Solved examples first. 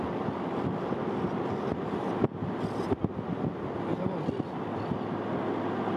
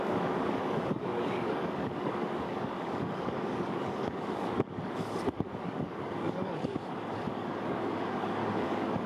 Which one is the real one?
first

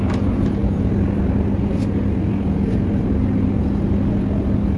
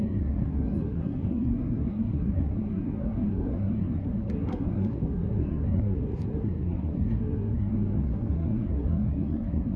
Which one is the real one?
first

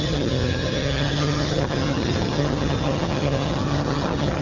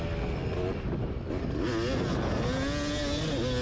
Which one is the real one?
second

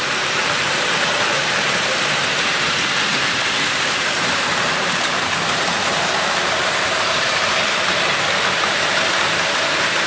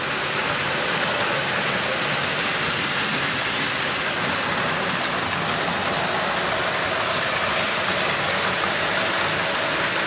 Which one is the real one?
second